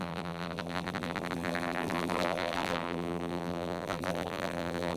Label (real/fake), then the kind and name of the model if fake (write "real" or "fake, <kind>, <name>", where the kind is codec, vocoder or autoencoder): fake, vocoder, BigVGAN v2